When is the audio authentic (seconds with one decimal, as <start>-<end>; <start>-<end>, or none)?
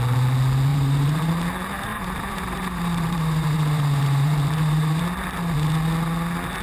0.0-0.7; 1.3-1.9; 5.0-6.6